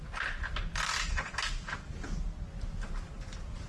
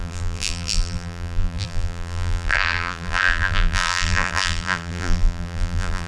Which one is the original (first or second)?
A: first